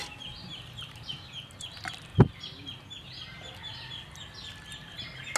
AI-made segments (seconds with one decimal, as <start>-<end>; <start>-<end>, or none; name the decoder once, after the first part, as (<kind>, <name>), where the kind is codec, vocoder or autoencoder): 0.4-1.1 (vocoder, BigVGAN v2)